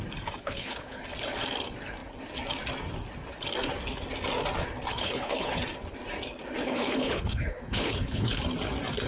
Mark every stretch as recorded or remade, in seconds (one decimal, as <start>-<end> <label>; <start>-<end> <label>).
0.0-0.4 recorded; 0.4-1.0 remade; 1.0-4.9 recorded; 4.9-5.6 remade; 5.6-6.6 recorded; 6.6-8.4 remade; 8.4-9.1 recorded